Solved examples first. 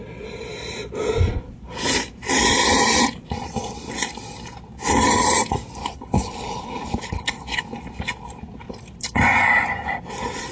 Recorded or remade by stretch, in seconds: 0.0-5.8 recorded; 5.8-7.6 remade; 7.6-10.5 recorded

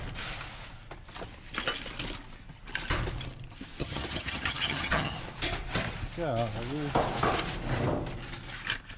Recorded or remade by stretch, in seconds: 0.0-3.8 recorded; 3.8-5.2 remade; 5.2-9.0 recorded

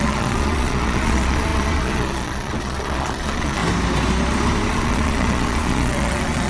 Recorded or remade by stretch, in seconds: 0.0-3.6 remade; 3.6-4.7 recorded; 4.7-6.5 remade

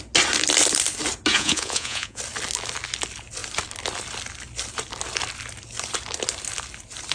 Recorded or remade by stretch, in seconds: 0.0-1.3 recorded; 1.3-2.2 remade; 2.2-7.1 recorded

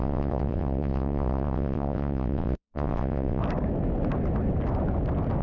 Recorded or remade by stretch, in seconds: 0.0-3.4 remade; 3.4-5.4 recorded